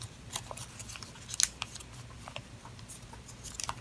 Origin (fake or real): real